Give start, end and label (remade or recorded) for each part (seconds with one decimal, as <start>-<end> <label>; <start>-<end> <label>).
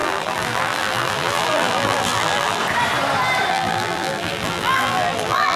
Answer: 0.0-2.6 remade; 2.6-3.5 recorded; 3.5-5.6 remade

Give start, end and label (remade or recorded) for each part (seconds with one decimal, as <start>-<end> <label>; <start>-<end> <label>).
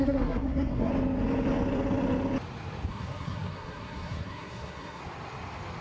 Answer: 0.0-0.9 remade; 0.9-2.9 recorded; 2.9-5.0 remade; 5.0-5.8 recorded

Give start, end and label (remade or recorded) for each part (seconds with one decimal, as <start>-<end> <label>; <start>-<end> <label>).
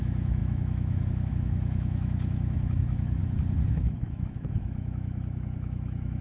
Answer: 0.0-3.2 remade; 3.2-3.7 recorded; 3.7-6.2 remade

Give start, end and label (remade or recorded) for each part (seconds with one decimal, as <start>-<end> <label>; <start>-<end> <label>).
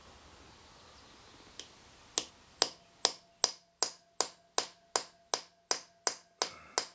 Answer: 0.0-6.9 recorded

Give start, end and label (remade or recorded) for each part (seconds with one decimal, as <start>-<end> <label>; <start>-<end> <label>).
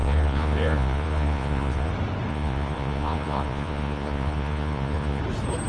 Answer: 0.0-1.9 remade; 1.9-2.3 recorded; 2.3-5.2 remade; 5.2-5.7 recorded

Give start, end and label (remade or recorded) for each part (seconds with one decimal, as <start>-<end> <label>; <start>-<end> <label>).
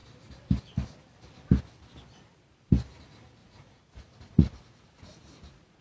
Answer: 0.0-3.4 recorded; 3.4-5.8 remade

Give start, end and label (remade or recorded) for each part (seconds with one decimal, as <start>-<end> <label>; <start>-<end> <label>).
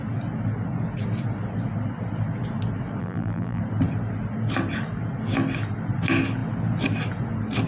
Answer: 0.0-3.0 recorded; 3.0-3.6 remade; 3.6-7.7 recorded